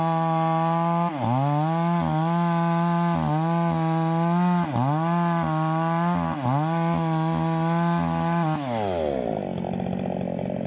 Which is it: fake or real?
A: real